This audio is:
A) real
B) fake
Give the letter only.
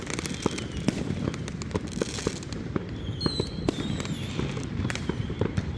B